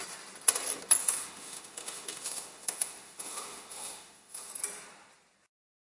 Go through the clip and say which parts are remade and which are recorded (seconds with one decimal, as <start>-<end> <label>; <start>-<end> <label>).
0.0-1.0 recorded; 1.0-4.5 remade; 4.5-5.8 recorded